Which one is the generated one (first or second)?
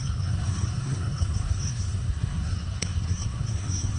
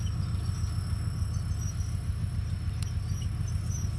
first